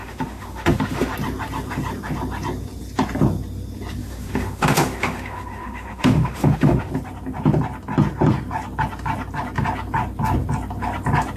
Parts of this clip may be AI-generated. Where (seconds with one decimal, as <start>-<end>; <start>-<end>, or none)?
0.0-1.1; 4.0-6.9